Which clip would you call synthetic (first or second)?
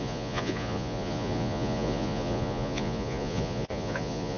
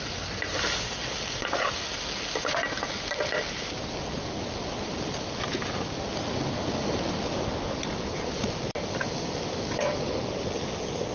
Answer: first